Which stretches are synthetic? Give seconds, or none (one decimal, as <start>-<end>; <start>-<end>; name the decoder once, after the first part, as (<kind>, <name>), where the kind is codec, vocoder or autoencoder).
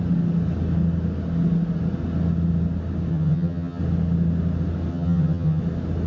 3.1-3.8 (vocoder, HiFi-GAN); 4.9-5.6